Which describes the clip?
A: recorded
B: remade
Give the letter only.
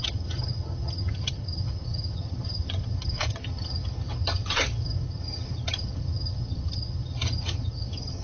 B